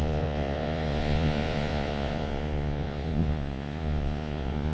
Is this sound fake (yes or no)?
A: yes